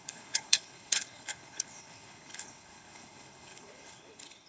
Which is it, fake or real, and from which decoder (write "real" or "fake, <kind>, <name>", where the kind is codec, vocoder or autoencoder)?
fake, codec, HILCodec